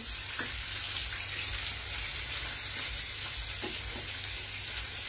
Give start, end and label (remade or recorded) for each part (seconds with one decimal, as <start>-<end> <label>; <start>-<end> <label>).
0.0-5.1 recorded